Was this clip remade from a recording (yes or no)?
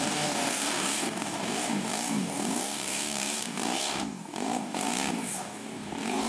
yes